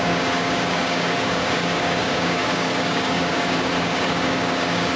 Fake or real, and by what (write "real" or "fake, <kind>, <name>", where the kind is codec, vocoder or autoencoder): fake, codec, DAC